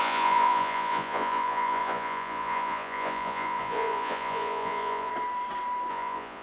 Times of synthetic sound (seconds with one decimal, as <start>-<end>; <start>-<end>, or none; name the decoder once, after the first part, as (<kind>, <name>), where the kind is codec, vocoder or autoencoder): 0.0-5.1 (vocoder, Vocos); 5.9-6.4